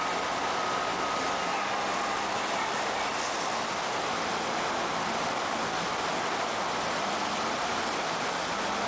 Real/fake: real